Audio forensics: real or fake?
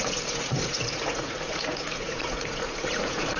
fake